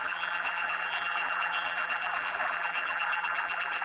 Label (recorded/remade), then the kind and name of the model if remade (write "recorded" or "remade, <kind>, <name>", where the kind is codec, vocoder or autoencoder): remade, vocoder, BigVGAN v2